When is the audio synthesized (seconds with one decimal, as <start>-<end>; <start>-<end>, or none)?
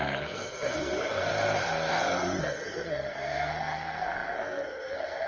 0.0-1.3; 2.4-5.3